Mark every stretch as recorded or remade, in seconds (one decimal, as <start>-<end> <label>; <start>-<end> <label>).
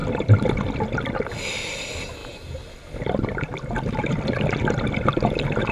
0.0-5.7 recorded